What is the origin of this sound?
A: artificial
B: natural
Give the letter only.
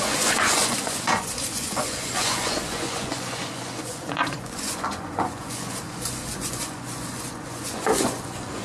A